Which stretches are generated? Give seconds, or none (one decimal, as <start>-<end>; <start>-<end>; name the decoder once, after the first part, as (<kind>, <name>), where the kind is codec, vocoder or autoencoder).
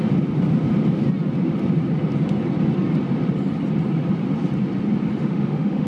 5.2-5.9 (autoencoder, DAC-VAE)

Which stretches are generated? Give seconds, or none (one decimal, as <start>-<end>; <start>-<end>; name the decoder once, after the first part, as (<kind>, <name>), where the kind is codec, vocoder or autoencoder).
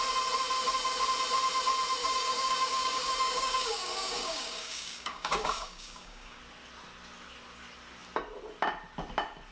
2.0-6.4 (codec, DAC)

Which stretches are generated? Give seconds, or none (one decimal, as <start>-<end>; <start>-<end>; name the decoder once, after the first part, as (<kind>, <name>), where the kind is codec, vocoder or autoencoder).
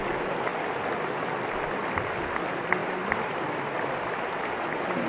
2.8-3.4 (vocoder, BigVGAN v2)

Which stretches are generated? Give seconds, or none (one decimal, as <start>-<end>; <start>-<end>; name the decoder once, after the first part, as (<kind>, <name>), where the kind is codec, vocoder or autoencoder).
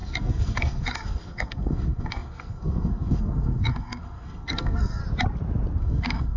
0.0-5.0 (codec, SNAC); 5.8-6.4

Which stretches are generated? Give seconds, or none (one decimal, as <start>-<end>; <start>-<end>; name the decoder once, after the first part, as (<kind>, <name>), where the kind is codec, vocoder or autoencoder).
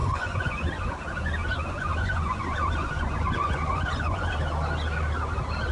0.0-0.9 (vocoder, Vocos); 1.4-4.3